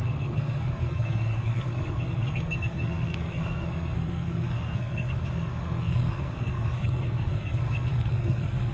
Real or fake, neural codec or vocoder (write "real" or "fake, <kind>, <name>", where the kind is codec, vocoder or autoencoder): fake, codec, SNAC